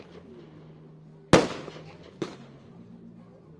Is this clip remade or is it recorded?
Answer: recorded